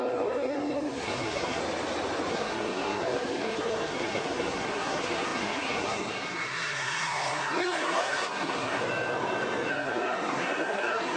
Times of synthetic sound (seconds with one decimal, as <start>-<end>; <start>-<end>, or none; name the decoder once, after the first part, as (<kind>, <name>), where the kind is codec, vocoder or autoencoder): 0.0-1.6 (codec, SNAC); 2.3-8.8; 9.7-11.2